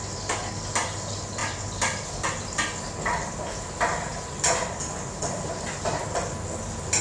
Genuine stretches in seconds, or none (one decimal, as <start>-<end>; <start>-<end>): 0.0-7.0